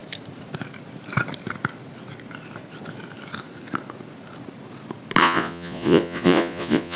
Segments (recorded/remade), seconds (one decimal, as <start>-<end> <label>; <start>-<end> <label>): 0.0-5.2 recorded; 5.2-7.0 remade